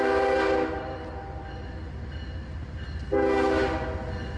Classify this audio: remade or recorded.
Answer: recorded